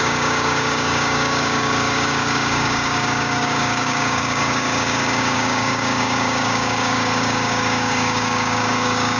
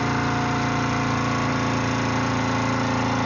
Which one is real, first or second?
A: second